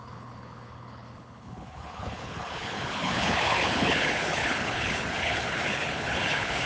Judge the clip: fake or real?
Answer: fake